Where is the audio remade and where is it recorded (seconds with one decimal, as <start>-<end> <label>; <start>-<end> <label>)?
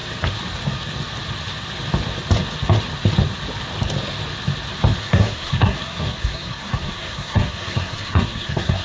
0.0-5.0 recorded; 5.0-8.8 remade